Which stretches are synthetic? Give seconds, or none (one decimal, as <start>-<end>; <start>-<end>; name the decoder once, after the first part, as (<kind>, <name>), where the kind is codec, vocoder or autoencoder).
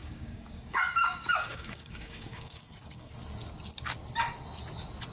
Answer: 0.0-3.1 (codec, DAC)